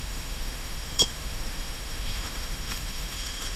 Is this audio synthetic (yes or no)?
yes